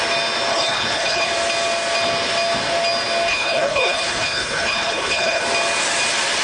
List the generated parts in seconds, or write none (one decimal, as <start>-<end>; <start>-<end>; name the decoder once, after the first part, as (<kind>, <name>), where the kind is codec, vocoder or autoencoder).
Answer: 0.5-1.3 (codec, HILCodec); 3.3-5.4